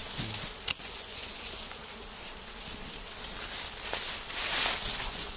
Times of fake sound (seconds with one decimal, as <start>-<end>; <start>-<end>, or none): 0.8-1.8; 5.0-5.4